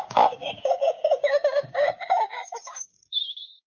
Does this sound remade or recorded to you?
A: remade